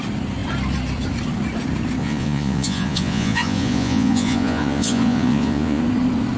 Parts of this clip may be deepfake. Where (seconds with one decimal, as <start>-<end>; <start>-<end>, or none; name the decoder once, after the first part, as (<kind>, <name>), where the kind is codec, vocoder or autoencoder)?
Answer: 2.0-5.8 (vocoder, Vocos)